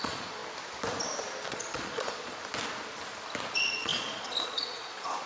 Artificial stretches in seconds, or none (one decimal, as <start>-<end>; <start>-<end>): 0.0-0.4; 1.5-2.4; 3.5-5.3